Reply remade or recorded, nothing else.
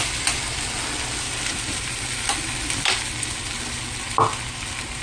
recorded